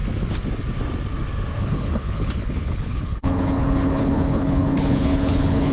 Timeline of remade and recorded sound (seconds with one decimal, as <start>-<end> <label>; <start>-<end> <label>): 0.0-1.6 recorded; 1.6-5.7 remade